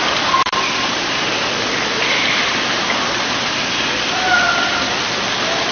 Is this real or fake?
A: fake